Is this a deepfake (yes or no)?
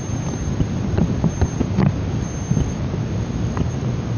no